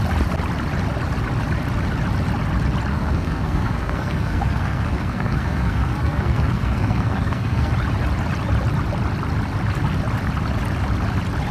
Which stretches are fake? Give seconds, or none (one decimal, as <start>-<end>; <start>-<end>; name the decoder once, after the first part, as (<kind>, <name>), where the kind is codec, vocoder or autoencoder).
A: 2.9-7.7 (codec, SNAC)